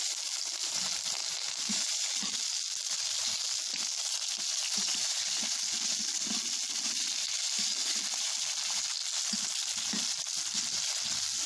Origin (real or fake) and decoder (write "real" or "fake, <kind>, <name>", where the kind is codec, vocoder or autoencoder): real